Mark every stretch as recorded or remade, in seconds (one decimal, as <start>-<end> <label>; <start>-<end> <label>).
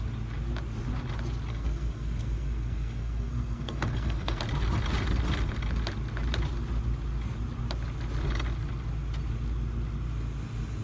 0.0-1.5 recorded; 1.5-4.4 remade; 4.4-10.8 recorded